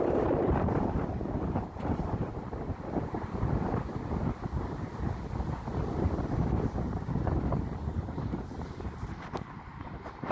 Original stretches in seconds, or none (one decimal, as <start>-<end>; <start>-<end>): 2.3-7.6